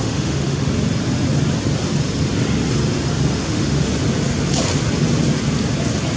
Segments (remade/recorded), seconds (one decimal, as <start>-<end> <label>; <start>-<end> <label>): 0.0-0.7 remade; 0.7-3.3 recorded; 3.3-3.9 remade; 3.9-6.2 recorded